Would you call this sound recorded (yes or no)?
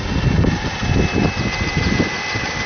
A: yes